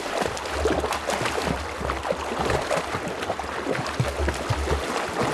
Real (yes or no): yes